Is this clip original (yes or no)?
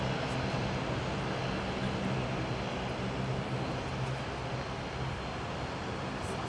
yes